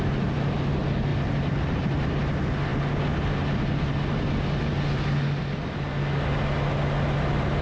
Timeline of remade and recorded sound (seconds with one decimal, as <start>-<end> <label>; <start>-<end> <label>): 0.0-7.6 recorded